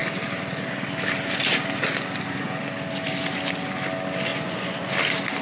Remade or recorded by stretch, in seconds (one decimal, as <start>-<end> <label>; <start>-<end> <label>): 0.0-4.3 recorded; 4.3-4.9 remade; 4.9-5.4 recorded